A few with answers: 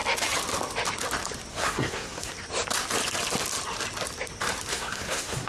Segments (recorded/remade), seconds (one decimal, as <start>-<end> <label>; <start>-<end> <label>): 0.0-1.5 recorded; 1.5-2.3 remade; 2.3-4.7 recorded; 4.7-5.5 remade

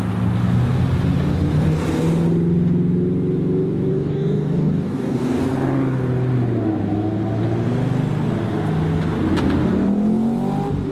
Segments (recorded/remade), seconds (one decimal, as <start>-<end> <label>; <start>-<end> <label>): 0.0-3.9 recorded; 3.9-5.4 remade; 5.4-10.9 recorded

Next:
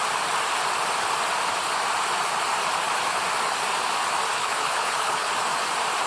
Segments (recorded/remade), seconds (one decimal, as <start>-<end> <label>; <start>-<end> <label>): 0.0-4.4 recorded; 4.4-5.3 remade; 5.3-6.1 recorded